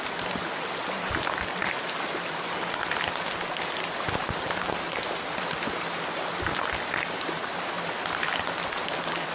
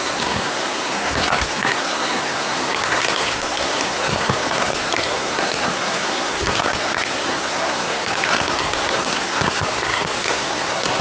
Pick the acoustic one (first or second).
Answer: first